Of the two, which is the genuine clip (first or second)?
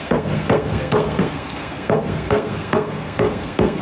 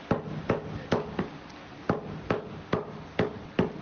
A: second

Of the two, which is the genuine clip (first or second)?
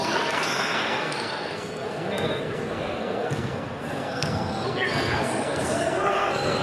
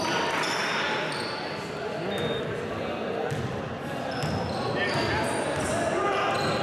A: second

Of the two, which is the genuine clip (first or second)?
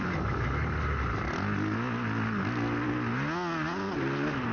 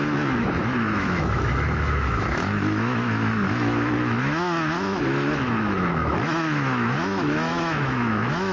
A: first